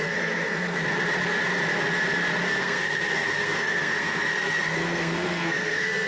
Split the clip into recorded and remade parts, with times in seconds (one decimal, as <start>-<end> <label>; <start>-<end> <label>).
0.0-0.8 remade; 0.8-2.6 recorded; 2.6-6.1 remade